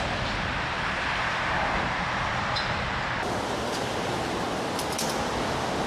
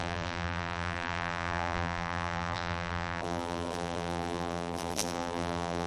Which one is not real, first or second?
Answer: second